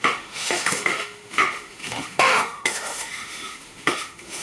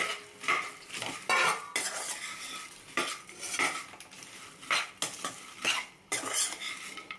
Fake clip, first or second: first